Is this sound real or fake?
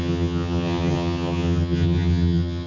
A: fake